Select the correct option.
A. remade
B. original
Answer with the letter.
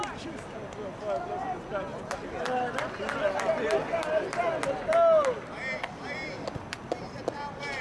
B